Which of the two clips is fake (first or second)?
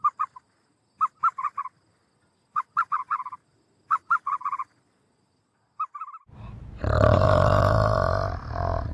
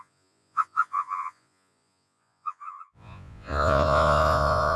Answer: second